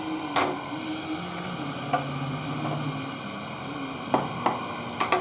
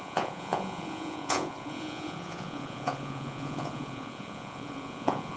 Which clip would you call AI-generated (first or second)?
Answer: second